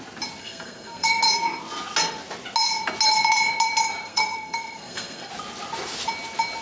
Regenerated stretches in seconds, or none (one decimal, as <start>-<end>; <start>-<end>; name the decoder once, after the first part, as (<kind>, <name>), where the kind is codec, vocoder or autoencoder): 0.4-1.2 (codec, SNAC); 4.0-5.3